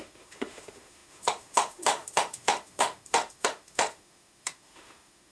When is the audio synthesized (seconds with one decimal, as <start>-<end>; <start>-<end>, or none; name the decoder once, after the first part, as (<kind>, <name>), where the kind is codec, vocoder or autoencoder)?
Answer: 0.0-5.3 (autoencoder, DAC-VAE)